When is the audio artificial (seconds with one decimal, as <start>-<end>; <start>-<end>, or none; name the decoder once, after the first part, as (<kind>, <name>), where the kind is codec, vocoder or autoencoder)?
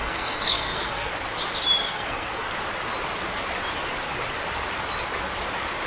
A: 0.0-1.1 (codec, SNAC); 1.8-2.4